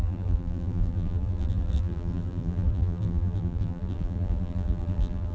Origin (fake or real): fake